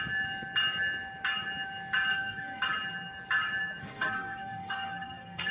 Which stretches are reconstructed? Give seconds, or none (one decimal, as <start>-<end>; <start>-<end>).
2.1-2.6; 3.8-5.5

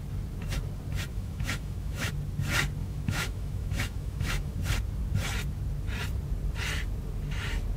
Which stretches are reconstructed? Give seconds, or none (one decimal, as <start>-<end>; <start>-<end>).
1.1-2.1; 2.8-4.6

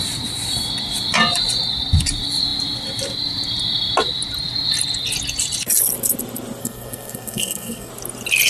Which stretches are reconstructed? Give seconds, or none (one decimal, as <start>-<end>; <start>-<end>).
6.6-7.9

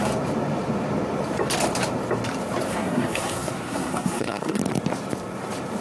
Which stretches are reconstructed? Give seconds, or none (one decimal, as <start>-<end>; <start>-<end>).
2.7-4.6

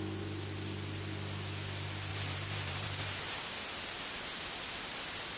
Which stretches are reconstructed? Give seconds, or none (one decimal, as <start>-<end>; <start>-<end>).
2.1-3.4